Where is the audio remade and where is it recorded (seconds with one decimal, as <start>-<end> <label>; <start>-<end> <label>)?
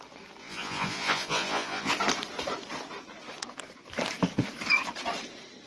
0.0-0.4 recorded; 0.4-1.9 remade; 1.9-5.7 recorded